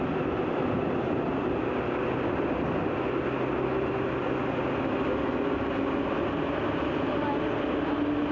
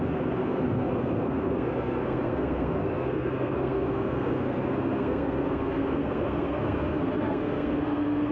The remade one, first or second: second